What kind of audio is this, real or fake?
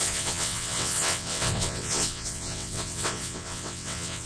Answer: fake